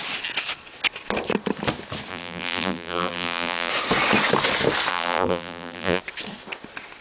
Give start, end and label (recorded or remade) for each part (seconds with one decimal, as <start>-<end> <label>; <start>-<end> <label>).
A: 0.0-2.1 recorded; 2.1-3.7 remade; 3.7-4.9 recorded; 4.9-6.0 remade; 6.0-7.0 recorded